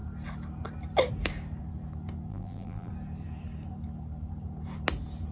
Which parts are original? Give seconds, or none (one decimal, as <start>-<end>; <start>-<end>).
0.0-2.3; 2.9-5.3